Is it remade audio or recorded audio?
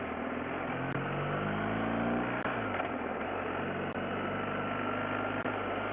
recorded